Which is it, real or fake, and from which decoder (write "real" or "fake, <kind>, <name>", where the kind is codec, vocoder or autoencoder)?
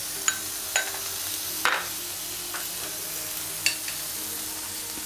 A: real